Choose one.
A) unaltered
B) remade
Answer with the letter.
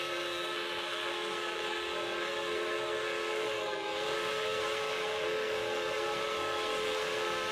B